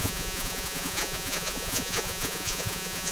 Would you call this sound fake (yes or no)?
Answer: yes